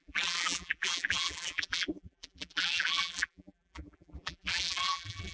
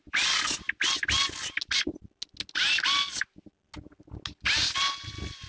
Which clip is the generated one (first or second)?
first